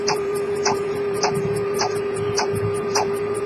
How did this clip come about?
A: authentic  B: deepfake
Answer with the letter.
B